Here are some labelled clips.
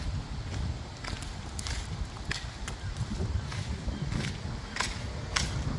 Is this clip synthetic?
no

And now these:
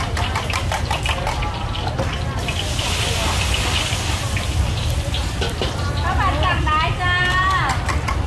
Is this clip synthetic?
no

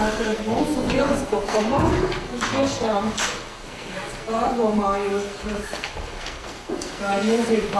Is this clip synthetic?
yes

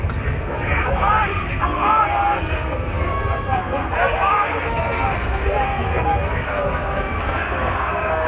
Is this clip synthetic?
yes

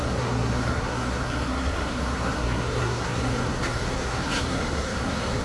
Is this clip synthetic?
yes